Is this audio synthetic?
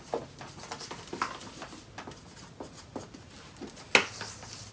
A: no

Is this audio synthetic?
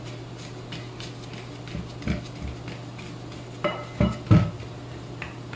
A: no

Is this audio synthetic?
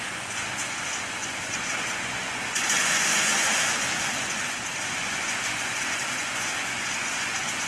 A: yes